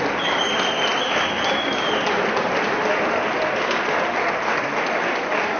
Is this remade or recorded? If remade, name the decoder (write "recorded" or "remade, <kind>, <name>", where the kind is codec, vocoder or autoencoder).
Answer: recorded